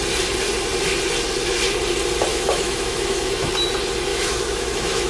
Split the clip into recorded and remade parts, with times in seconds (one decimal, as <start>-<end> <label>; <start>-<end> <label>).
0.0-2.3 recorded; 2.3-3.5 remade; 3.5-4.1 recorded; 4.1-5.1 remade

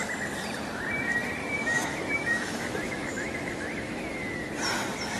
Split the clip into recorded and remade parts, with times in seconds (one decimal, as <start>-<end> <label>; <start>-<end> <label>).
0.0-1.4 recorded; 1.4-4.5 remade; 4.5-5.2 recorded

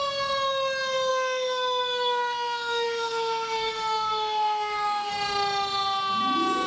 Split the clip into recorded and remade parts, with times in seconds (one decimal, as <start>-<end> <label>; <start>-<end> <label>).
0.0-1.1 recorded; 1.1-5.1 remade; 5.1-6.7 recorded

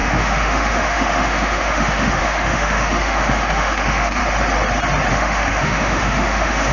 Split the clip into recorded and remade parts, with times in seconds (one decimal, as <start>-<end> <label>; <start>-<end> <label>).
0.0-4.2 remade; 4.2-5.1 recorded; 5.1-6.7 remade

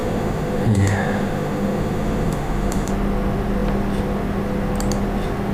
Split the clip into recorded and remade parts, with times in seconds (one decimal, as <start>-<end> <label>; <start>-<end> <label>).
0.0-2.9 remade; 2.9-5.5 recorded

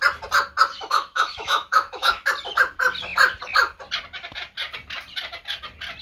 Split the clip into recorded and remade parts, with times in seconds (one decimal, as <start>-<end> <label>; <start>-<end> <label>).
0.0-0.7 recorded; 0.7-2.3 remade; 2.3-6.0 recorded

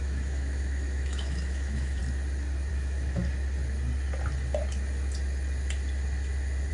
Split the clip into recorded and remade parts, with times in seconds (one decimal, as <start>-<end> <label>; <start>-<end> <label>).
0.0-2.0 remade; 2.0-2.7 recorded; 2.7-3.2 remade; 3.2-6.7 recorded